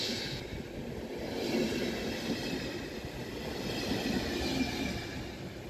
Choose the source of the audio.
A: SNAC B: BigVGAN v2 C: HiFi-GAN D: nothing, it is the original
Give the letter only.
D